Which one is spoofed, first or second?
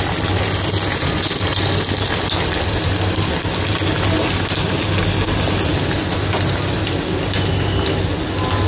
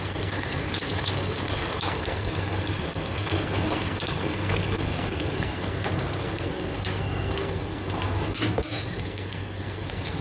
second